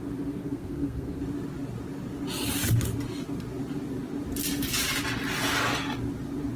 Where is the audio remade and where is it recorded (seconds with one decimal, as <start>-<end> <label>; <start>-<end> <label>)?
0.0-0.4 recorded; 0.4-1.2 remade; 1.2-6.6 recorded

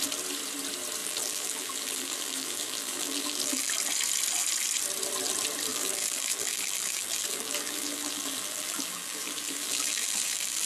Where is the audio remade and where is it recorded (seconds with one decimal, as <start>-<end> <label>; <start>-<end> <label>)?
0.0-1.0 recorded; 1.0-3.7 remade; 3.7-5.7 recorded; 5.7-10.7 remade

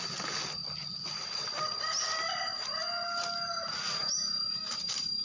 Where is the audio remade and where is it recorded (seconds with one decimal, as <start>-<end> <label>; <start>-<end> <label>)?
0.0-5.2 recorded

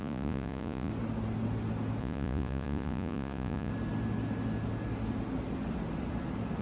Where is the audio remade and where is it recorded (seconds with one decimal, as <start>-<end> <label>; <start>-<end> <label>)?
0.0-0.9 remade; 0.9-2.0 recorded; 2.0-3.7 remade; 3.7-6.6 recorded